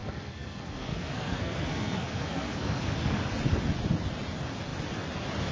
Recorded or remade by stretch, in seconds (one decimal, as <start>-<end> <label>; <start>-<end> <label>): 0.0-3.3 remade; 3.3-5.5 recorded